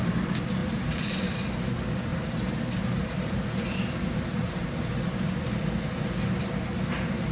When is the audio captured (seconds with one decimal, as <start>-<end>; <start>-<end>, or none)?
0.0-0.6; 1.7-2.1; 3.4-4.1; 4.9-7.3